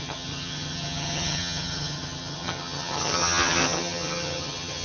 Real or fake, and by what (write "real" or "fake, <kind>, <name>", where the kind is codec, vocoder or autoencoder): fake, vocoder, HiFi-GAN